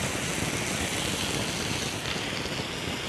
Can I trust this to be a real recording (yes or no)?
yes